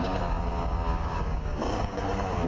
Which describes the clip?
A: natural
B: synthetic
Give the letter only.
B